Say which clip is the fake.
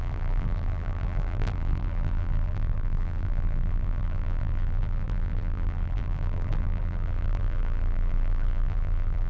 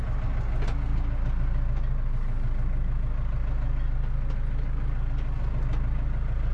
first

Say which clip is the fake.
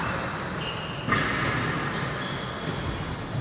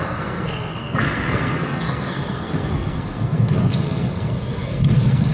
second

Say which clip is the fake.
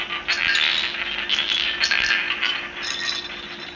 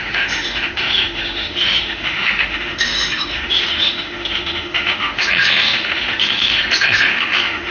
second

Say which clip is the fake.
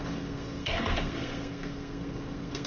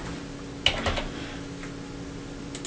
first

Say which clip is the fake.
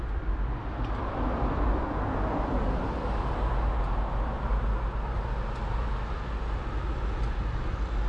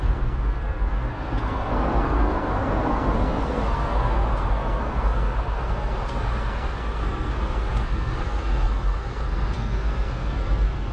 second